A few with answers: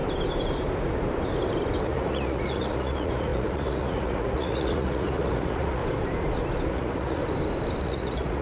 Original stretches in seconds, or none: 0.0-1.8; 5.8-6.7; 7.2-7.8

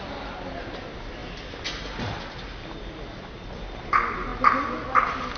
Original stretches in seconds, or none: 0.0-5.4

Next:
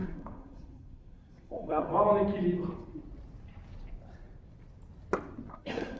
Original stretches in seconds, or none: 1.9-5.5

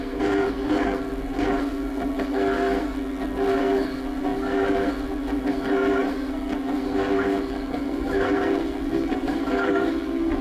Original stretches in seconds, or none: none

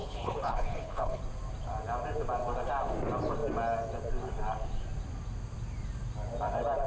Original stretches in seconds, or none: 1.2-6.9

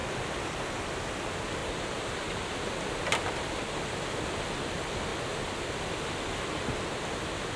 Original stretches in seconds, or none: 0.0-1.6; 2.1-7.6

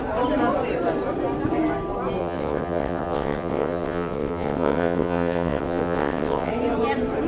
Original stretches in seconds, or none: 0.0-2.2; 6.5-7.3

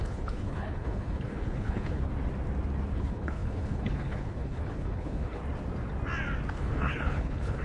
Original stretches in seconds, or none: 2.1-2.9; 5.4-6.5